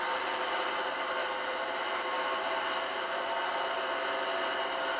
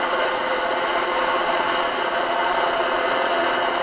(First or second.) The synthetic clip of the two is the second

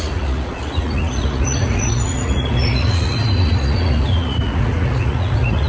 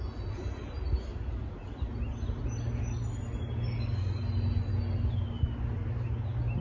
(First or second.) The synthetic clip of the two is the first